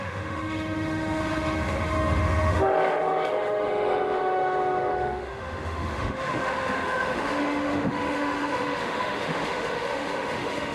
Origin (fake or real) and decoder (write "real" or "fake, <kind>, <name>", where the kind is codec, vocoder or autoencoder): fake, autoencoder, DAC-VAE